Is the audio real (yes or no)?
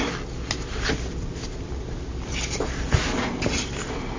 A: yes